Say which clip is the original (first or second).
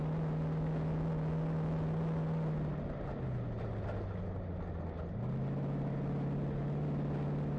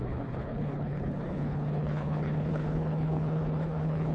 first